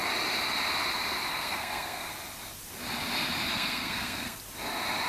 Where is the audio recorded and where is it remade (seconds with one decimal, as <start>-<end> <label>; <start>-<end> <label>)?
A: 0.0-1.3 recorded; 1.3-2.1 remade; 2.1-3.5 recorded; 3.5-4.4 remade; 4.4-5.1 recorded